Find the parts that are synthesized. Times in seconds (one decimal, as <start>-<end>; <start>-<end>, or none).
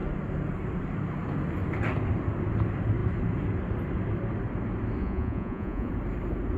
5.0-5.9